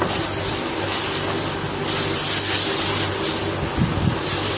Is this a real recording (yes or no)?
yes